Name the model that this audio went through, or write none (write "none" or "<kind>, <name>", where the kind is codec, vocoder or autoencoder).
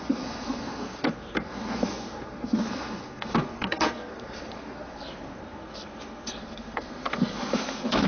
codec, SNAC